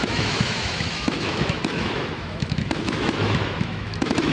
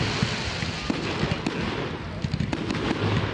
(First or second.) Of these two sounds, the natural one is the second